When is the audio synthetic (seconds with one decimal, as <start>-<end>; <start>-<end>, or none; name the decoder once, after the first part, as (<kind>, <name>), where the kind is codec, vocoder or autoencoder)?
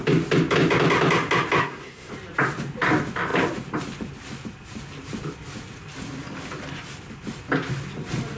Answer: 1.6-2.1 (codec, SNAC)